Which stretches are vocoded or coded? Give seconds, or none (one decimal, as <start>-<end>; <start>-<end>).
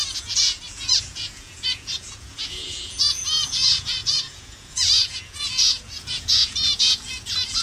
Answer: 0.0-7.6